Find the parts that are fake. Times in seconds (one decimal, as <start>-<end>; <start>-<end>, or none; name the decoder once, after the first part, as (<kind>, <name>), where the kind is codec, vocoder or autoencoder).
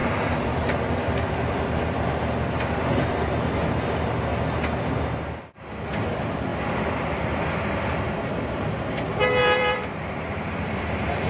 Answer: 0.0-1.6 (vocoder, BigVGAN v2); 9.4-10.9